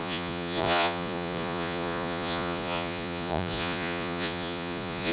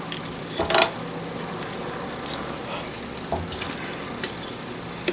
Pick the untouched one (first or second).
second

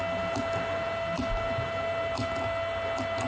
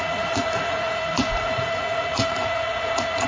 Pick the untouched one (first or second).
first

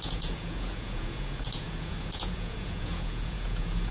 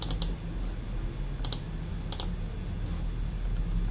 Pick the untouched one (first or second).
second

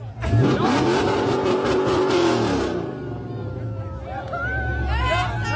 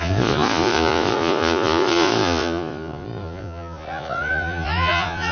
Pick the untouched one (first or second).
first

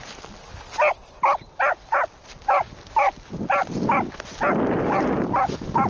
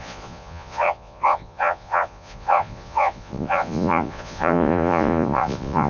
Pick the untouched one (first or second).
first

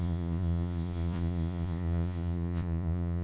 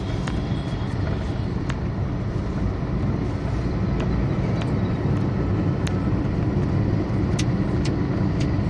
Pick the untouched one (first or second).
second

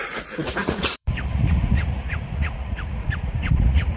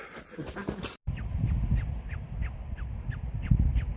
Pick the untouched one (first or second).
second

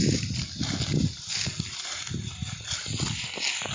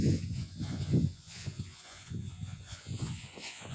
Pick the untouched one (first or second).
first